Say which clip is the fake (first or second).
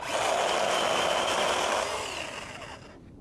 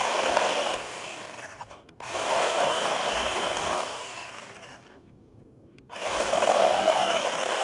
second